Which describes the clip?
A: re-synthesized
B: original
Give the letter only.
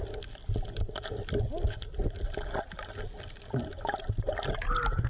B